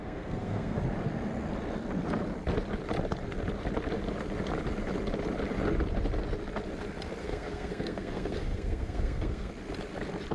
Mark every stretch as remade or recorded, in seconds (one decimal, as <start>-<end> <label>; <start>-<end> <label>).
0.0-0.8 remade; 0.8-7.2 recorded; 7.2-9.5 remade; 9.5-10.3 recorded